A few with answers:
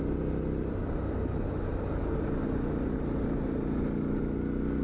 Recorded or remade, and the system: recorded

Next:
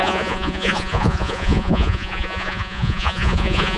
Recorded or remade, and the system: remade, vocoder, Vocos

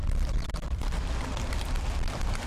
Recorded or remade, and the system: recorded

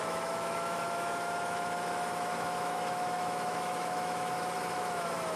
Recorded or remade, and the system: remade, autoencoder, DAC-VAE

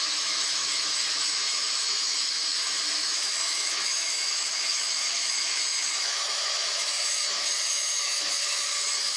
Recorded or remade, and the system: remade, autoencoder, DAC-VAE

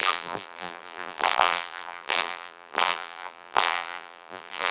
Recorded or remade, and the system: remade, vocoder, BigVGAN v2